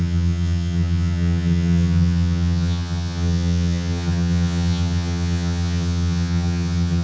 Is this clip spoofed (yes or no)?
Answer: yes